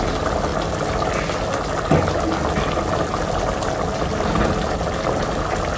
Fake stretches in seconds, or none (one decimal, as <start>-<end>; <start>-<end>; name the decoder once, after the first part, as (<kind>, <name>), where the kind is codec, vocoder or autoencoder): none